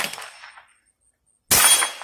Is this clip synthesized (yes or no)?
no